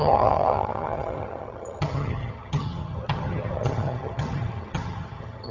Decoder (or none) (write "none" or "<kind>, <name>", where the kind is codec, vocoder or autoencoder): vocoder, HiFi-GAN